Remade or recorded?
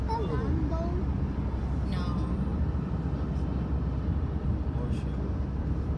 recorded